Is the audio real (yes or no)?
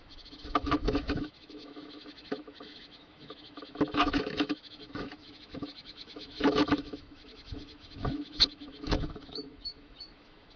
no